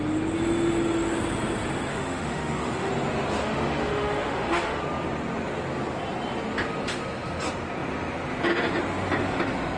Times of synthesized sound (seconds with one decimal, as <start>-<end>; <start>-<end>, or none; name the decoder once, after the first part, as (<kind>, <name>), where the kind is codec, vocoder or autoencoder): 1.9-2.9 (autoencoder, DAC-VAE); 3.4-4.8